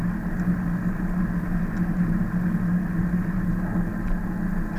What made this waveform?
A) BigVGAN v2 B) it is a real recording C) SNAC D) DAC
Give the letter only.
B